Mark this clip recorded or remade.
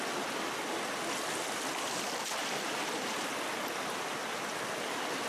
recorded